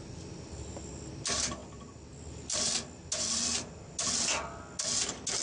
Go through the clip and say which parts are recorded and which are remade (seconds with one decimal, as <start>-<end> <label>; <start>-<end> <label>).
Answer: 0.0-5.4 recorded